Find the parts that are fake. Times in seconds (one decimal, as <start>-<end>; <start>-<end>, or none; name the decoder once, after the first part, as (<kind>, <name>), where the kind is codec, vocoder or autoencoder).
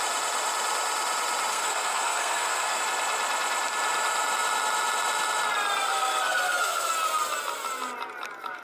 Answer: 1.5-2.8 (codec, SNAC); 5.9-6.9